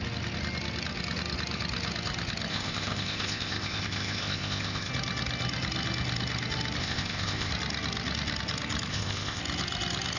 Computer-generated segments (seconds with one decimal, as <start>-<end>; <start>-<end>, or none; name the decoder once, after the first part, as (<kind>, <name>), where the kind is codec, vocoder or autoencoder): 2.5-4.9 (codec, ZipCodec); 6.8-7.5; 8.9-9.4